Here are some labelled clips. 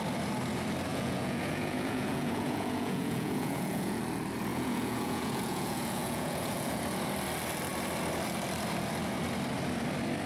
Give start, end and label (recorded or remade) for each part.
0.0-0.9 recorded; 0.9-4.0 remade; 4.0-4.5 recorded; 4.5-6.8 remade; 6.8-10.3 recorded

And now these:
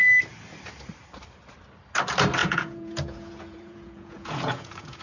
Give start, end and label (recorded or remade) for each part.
0.0-2.4 recorded; 2.4-5.0 remade

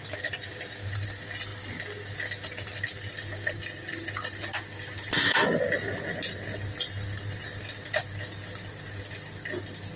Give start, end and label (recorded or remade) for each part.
0.0-10.0 recorded

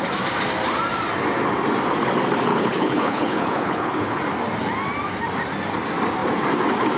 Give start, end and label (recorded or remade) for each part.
0.0-2.5 recorded; 2.5-4.2 remade; 4.2-7.0 recorded

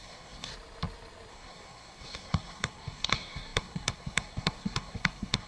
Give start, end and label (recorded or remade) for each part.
0.0-0.5 remade; 0.5-1.3 recorded; 1.3-5.5 remade

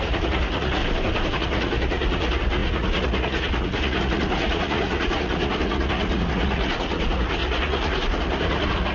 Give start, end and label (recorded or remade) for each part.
0.0-0.8 remade; 0.8-1.3 recorded; 1.3-8.9 remade